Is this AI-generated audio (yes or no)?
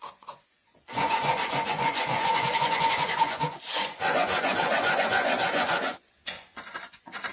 yes